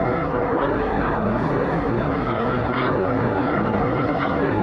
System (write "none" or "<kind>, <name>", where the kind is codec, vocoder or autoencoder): codec, SNAC